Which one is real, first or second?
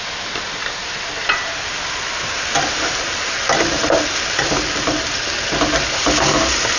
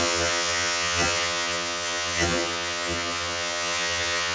first